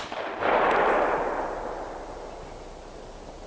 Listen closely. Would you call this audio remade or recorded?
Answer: recorded